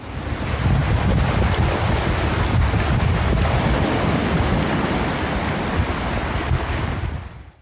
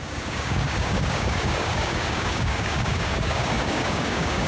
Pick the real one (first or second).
first